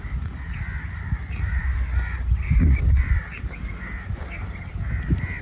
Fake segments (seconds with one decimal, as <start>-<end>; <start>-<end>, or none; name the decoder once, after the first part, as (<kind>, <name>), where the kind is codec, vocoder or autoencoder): none